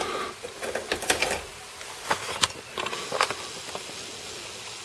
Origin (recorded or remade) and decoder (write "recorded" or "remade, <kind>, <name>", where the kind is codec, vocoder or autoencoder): recorded